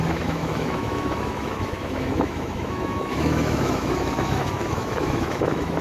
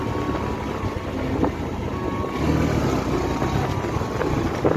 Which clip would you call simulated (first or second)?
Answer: first